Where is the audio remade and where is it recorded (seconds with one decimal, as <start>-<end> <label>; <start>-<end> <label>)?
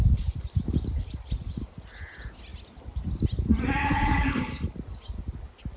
0.0-3.8 recorded; 3.8-4.7 remade; 4.7-5.8 recorded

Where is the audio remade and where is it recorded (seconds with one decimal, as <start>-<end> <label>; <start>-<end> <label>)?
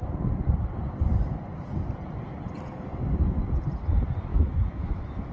0.0-4.3 recorded; 4.3-5.3 remade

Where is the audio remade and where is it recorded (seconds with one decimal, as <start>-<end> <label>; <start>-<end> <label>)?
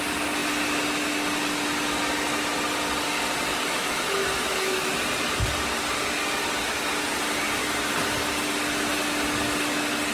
0.0-3.5 recorded; 3.5-4.9 remade; 4.9-10.1 recorded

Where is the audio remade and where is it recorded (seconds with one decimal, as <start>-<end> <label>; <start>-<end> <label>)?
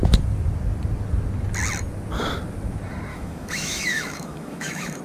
0.0-3.1 recorded; 3.1-5.0 remade